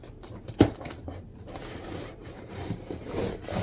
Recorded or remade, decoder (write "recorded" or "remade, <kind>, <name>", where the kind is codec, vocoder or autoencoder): remade, vocoder, BigVGAN v2